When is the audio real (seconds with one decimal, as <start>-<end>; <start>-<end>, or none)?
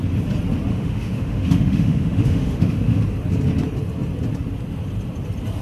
0.0-0.7; 3.0-5.6